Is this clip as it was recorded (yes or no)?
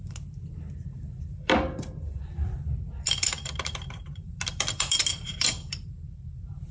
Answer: no